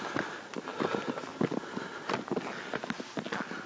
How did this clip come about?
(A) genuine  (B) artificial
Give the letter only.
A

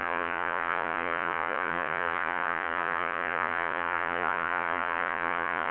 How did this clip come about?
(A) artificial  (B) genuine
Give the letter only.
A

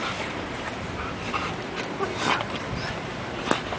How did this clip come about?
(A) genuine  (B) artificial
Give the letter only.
A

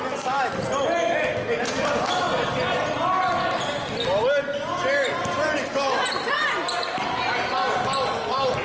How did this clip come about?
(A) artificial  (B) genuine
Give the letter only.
B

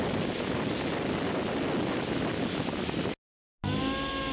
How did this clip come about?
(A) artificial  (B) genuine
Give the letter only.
B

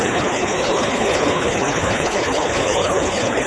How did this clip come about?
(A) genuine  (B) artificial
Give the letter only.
B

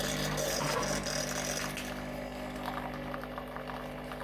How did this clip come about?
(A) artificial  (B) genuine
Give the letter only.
B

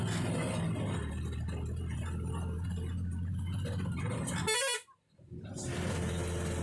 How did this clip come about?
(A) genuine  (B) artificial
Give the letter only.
A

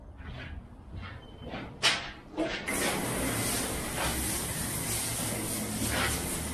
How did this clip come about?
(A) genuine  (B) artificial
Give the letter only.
A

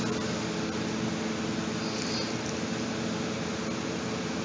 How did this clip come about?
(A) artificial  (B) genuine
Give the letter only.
B